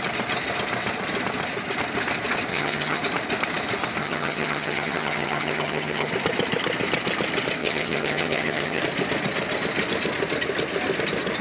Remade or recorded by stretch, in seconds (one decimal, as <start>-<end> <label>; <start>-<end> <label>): 0.0-2.5 recorded; 2.5-3.0 remade; 3.0-4.0 recorded; 4.0-6.1 remade; 6.1-7.6 recorded; 7.6-8.8 remade; 8.8-11.4 recorded